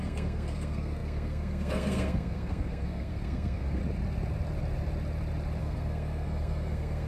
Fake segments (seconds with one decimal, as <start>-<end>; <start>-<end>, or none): 0.0-3.8; 5.6-7.1